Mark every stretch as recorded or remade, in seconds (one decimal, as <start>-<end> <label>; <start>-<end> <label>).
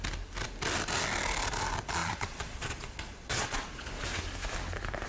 0.0-2.0 recorded; 2.0-3.9 remade; 3.9-5.1 recorded